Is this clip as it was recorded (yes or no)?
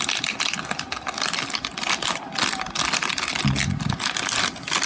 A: yes